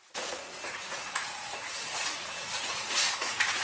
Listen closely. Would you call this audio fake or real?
fake